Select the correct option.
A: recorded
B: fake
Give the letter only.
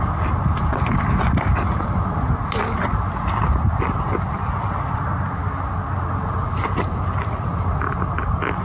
A